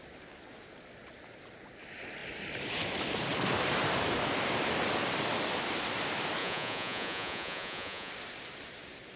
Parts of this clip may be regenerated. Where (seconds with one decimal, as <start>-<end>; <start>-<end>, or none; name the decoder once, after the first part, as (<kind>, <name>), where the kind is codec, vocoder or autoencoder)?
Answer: 6.4-8.1 (vocoder, Vocos)